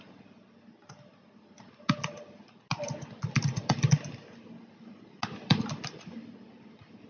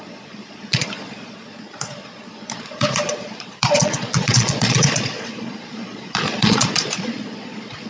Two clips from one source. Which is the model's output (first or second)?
second